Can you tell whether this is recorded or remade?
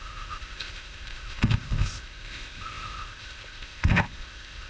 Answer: remade